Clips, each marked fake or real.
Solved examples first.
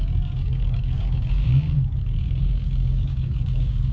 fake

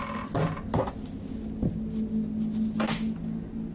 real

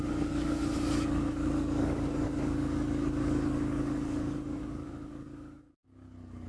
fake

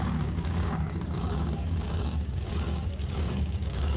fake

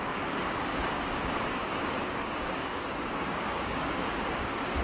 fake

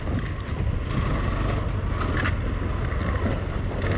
real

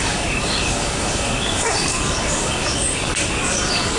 fake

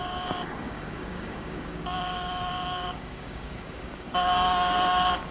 fake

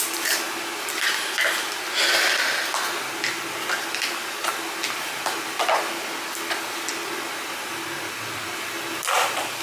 real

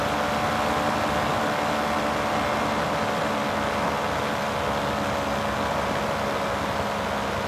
real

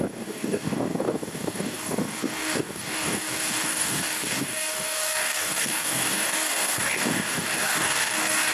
fake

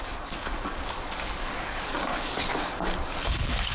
fake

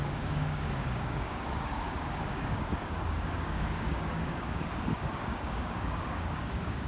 fake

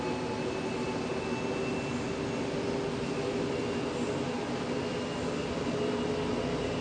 real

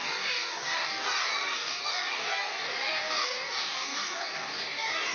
fake